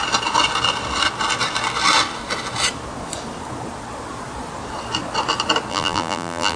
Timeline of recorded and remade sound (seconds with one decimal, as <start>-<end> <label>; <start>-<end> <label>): 0.0-5.7 recorded; 5.7-6.6 remade